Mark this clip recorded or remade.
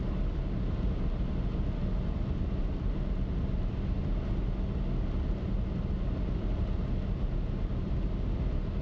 recorded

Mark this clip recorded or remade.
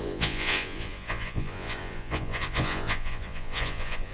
remade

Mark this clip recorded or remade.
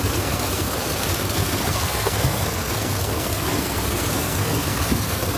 remade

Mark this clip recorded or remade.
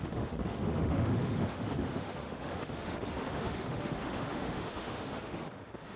remade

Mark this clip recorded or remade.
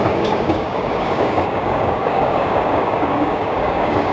remade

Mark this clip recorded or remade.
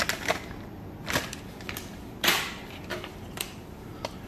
recorded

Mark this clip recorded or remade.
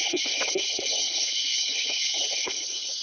remade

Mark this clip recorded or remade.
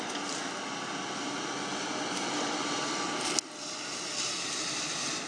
recorded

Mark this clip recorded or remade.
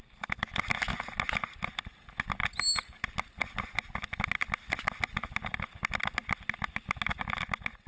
recorded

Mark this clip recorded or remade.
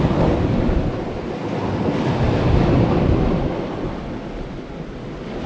recorded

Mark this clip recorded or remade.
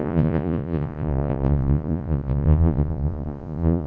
remade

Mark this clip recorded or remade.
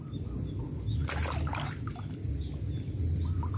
recorded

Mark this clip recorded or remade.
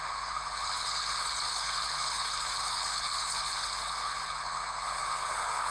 remade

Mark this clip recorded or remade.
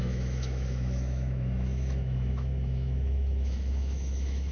remade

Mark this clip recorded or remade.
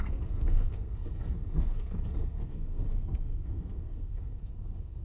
remade